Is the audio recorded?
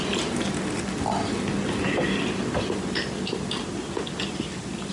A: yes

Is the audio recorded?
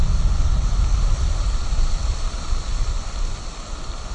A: yes